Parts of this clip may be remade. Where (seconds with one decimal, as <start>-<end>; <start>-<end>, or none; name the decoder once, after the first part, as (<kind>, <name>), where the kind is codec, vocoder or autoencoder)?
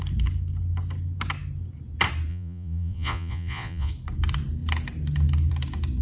2.3-3.9 (vocoder, Vocos)